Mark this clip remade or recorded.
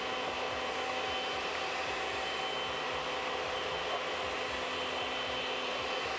recorded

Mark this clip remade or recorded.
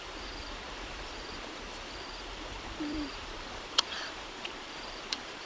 remade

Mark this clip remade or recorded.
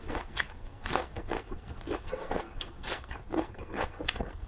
remade